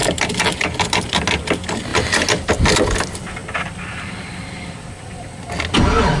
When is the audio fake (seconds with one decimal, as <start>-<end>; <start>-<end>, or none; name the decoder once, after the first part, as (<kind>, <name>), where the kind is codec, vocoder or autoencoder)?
3.4-4.9 (vocoder, BigVGAN v2)

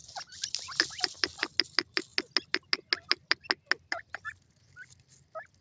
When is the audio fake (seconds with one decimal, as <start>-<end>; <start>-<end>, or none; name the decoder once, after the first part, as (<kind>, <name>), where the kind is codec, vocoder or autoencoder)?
none

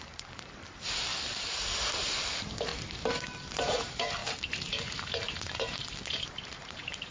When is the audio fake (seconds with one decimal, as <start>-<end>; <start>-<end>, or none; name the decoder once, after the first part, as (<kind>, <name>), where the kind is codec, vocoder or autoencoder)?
0.0-1.1 (vocoder, BigVGAN v2); 1.9-2.7; 3.5-4.2; 5.4-7.1

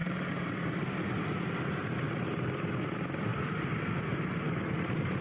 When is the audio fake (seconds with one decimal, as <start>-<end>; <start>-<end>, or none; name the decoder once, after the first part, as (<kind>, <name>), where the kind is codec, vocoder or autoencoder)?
3.3-4.7 (vocoder, BigVGAN v2)